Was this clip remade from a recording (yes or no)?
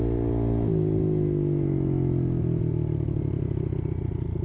no